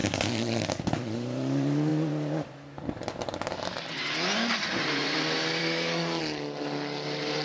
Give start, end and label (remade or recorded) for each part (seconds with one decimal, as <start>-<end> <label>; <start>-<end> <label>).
0.0-5.6 recorded; 5.6-6.2 remade; 6.2-7.4 recorded